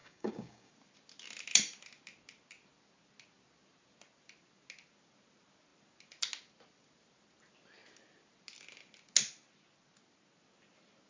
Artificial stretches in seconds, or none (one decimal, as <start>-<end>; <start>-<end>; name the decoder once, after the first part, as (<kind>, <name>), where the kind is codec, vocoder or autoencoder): 0.0-0.7 (codec, DAC)